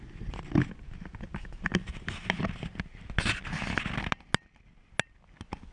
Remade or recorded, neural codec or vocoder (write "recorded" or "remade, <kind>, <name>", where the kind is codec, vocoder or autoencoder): recorded